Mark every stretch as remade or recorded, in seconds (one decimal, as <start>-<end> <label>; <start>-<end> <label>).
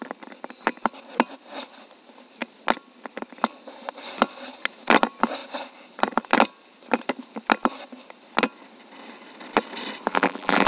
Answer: 0.0-10.1 recorded; 10.1-10.7 remade